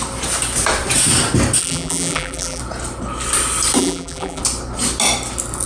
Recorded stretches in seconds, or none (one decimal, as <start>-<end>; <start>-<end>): 0.0-1.6; 2.6-3.8; 4.4-5.7